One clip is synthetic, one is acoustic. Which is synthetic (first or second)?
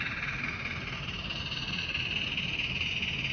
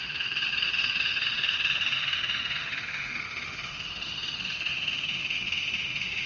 second